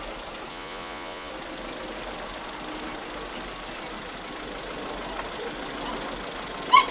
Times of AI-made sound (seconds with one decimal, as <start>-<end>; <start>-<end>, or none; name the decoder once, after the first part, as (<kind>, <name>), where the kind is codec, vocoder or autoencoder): 0.5-1.3 (vocoder, Vocos)